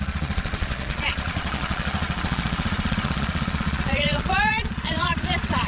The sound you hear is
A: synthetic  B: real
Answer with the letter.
A